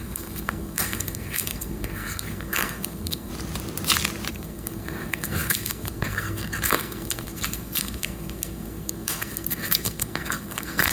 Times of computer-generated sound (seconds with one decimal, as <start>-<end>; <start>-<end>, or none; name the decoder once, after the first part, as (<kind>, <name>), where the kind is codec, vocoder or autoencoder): 0.0-3.3 (codec, SNAC); 4.3-10.9